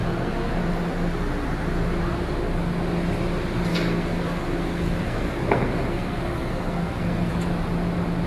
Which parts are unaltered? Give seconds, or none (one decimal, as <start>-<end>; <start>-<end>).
0.5-3.7; 7.3-8.3